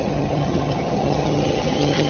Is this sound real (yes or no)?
no